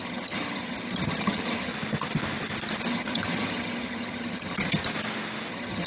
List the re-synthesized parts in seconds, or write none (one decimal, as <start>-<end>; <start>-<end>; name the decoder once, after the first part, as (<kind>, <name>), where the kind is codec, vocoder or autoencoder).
0.0-1.7 (vocoder, HiFi-GAN); 2.8-4.8; 5.5-5.9